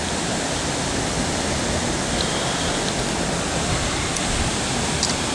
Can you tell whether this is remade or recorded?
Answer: recorded